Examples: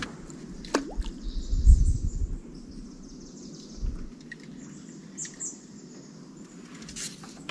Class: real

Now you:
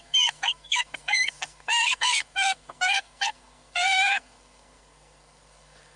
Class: fake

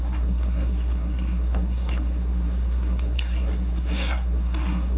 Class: fake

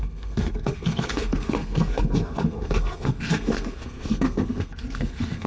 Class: fake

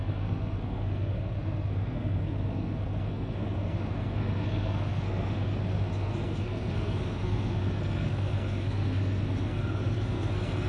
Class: fake